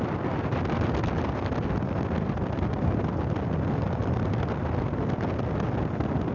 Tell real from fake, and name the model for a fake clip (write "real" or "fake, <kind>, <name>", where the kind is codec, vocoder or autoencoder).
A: real